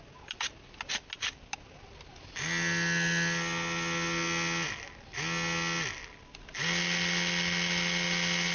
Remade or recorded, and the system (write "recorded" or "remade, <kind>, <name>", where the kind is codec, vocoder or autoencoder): recorded